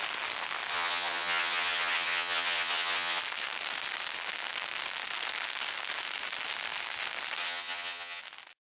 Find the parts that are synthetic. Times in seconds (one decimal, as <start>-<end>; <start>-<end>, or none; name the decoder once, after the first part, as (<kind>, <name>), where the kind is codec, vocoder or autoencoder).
0.7-3.2 (vocoder, HiFi-GAN); 7.4-8.2